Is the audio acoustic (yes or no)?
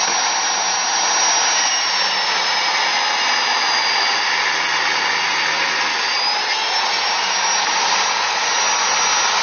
yes